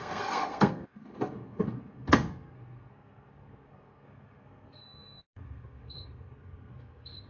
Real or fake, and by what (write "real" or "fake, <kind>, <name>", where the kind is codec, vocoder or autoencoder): fake, codec, SNAC